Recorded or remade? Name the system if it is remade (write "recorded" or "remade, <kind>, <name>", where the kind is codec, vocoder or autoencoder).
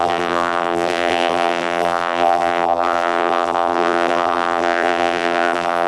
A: remade, vocoder, BigVGAN v2